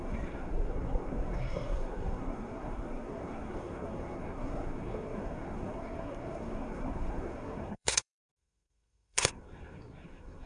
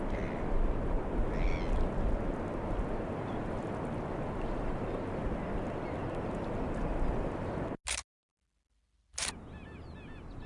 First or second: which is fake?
first